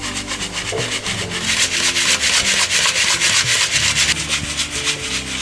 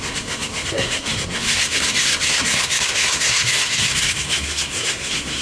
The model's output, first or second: second